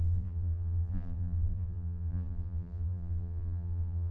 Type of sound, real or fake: fake